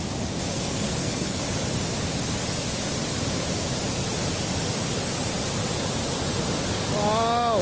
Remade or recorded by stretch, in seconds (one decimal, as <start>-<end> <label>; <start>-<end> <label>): 0.0-0.5 recorded; 0.5-1.4 remade; 1.4-7.6 recorded